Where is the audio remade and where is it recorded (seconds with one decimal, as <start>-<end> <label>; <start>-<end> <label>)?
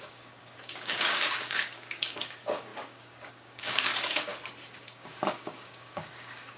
0.0-4.3 remade; 4.3-4.8 recorded; 4.8-6.6 remade